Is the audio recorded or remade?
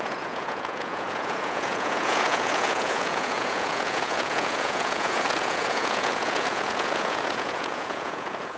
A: remade